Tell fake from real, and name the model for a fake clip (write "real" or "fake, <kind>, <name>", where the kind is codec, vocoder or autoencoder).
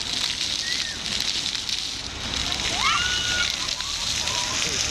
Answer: real